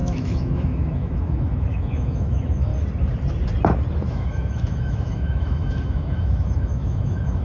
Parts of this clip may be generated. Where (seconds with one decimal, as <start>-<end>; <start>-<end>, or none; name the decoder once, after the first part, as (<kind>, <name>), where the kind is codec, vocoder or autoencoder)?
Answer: 0.0-2.7 (autoencoder, DAC-VAE); 4.1-7.4